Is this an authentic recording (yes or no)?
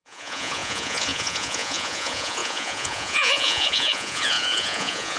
no